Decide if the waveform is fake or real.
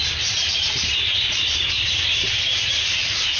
fake